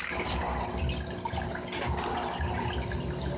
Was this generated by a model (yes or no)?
no